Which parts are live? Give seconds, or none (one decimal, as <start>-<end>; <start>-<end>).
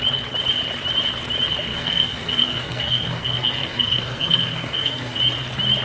0.0-1.7; 5.2-5.8